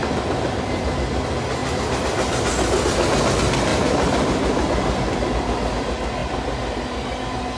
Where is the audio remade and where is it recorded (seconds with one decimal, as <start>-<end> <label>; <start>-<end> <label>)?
0.0-7.6 recorded